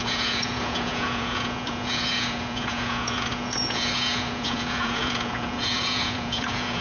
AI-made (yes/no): yes